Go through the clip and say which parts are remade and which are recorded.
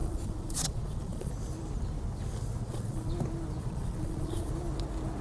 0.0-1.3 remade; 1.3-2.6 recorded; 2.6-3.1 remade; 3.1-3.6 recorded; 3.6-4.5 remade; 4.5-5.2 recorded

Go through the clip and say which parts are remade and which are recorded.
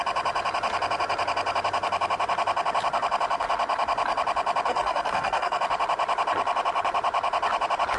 0.0-4.7 recorded; 4.7-5.6 remade; 5.6-8.0 recorded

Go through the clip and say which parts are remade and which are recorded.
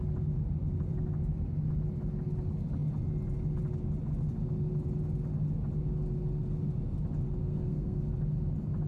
0.0-7.4 recorded; 7.4-8.0 remade; 8.0-8.9 recorded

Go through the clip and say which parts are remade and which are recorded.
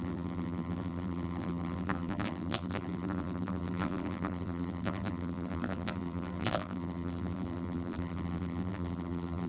0.0-9.5 remade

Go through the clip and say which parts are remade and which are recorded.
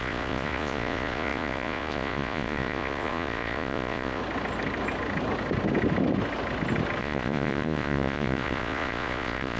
0.0-4.2 remade; 4.2-7.0 recorded; 7.0-9.6 remade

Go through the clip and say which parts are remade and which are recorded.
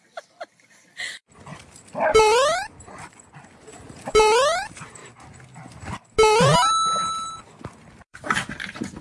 0.0-5.0 remade; 5.0-7.6 recorded; 7.6-9.0 remade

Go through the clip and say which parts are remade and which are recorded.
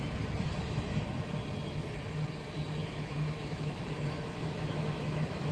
0.0-0.6 recorded; 0.6-1.3 remade; 1.3-2.8 recorded; 2.8-5.5 remade